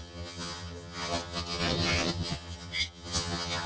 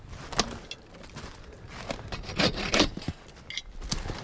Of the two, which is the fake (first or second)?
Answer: first